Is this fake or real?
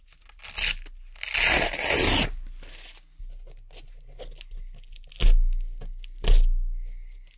real